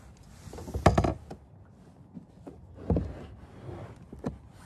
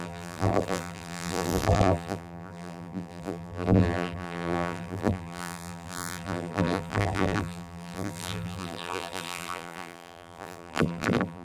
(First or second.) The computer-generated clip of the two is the second